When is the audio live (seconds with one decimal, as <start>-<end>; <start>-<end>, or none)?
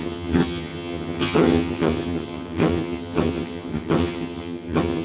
none